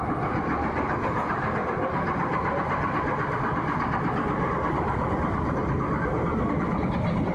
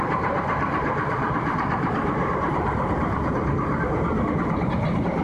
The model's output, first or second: second